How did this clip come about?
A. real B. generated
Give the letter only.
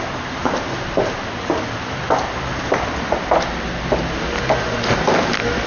A